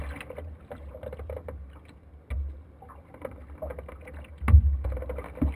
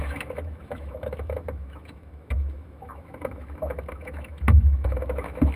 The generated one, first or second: second